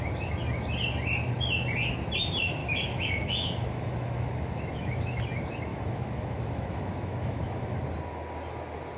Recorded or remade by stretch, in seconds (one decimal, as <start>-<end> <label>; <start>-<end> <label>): 0.0-2.6 recorded; 2.6-5.2 remade; 5.2-5.7 recorded; 5.7-7.8 remade; 7.8-9.0 recorded